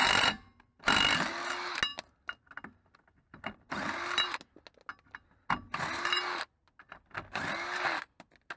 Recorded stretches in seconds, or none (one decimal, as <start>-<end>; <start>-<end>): 0.0-8.6